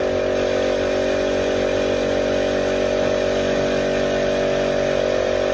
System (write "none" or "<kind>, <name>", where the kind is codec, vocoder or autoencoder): none